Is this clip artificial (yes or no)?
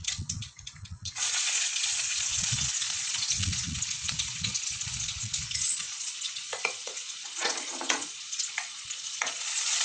yes